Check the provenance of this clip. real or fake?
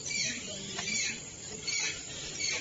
fake